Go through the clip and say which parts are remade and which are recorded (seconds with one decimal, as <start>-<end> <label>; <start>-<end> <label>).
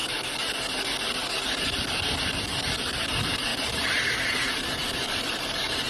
0.0-3.5 recorded; 3.5-5.9 remade